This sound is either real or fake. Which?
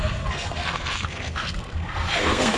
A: fake